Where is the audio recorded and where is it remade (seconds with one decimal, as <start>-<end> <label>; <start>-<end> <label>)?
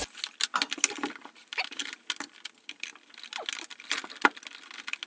0.0-5.1 recorded